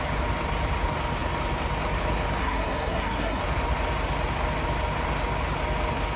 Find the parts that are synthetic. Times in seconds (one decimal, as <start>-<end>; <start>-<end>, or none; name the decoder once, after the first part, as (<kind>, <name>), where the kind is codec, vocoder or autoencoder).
2.4-3.4 (codec, SNAC)